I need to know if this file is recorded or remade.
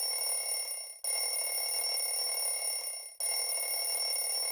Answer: recorded